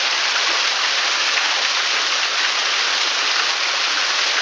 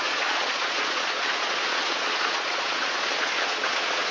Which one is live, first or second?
first